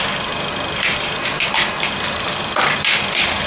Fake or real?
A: real